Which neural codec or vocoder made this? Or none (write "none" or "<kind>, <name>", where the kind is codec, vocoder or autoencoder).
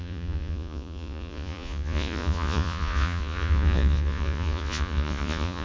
vocoder, Vocos